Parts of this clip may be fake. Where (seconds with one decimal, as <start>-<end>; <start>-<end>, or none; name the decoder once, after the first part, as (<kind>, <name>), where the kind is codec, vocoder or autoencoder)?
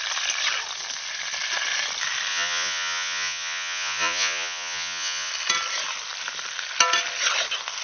2.3-5.3 (vocoder, Vocos)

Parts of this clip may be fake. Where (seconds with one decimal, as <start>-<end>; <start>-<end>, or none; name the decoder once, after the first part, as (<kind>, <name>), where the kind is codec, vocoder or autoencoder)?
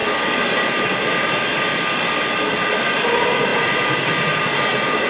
none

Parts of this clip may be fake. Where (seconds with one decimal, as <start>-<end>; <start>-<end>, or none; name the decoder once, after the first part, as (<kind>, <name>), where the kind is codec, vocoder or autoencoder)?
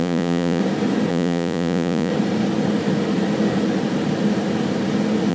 0.0-0.6 (vocoder, Vocos); 1.1-2.1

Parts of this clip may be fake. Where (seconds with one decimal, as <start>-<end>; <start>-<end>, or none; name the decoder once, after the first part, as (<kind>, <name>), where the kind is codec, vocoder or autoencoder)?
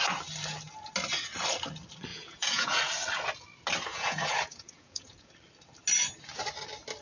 2.1-2.8 (vocoder, Vocos); 3.9-5.3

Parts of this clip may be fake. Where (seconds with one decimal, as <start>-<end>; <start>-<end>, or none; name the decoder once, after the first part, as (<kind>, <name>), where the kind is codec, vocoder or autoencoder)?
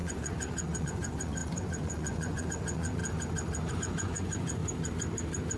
0.0-3.0 (vocoder, Vocos); 3.7-4.6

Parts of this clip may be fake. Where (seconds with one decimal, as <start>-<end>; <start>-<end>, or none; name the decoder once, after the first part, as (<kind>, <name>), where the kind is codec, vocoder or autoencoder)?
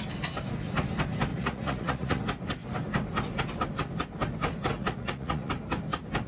1.3-2.2 (vocoder, Vocos); 4.8-5.5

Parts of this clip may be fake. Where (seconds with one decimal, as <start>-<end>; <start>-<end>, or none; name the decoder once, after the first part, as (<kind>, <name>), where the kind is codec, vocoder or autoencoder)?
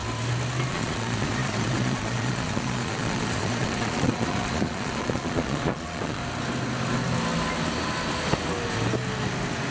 0.7-6.2 (vocoder, Vocos)